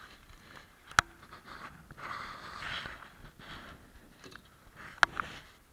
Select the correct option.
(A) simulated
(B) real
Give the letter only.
B